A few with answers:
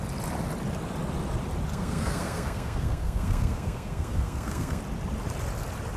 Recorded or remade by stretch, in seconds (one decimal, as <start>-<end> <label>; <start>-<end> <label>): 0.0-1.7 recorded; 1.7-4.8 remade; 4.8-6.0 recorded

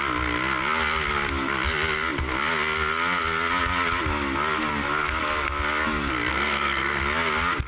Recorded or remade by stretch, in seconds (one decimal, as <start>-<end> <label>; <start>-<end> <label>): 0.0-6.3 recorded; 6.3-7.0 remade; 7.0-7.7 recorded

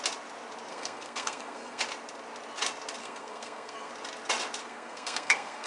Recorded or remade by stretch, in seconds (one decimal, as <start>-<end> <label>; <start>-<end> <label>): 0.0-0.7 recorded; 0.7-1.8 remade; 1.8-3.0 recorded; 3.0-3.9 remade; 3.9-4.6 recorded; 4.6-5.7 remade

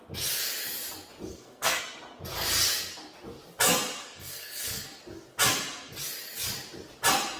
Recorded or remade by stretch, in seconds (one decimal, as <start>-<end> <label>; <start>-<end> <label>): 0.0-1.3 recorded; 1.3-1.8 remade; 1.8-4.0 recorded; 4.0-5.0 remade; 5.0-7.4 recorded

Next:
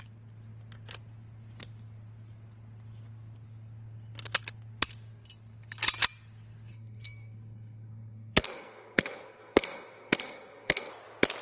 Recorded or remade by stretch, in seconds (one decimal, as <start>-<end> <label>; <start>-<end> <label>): 0.0-6.7 recorded; 6.7-10.9 remade; 10.9-11.4 recorded

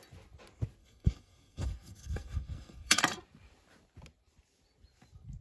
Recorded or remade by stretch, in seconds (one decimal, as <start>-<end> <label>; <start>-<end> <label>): 0.0-0.8 recorded; 0.8-3.0 remade; 3.0-5.4 recorded